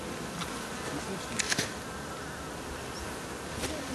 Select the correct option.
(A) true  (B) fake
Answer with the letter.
A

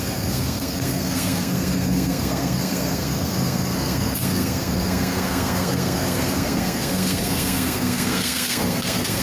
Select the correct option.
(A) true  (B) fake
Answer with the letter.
B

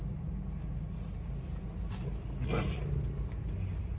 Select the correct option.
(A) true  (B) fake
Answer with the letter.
A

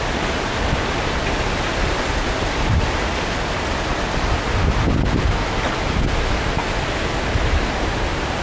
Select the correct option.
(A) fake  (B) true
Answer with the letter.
B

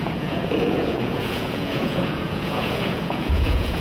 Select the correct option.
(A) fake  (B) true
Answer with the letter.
A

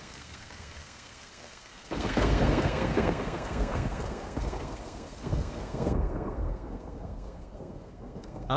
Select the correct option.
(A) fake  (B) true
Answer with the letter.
A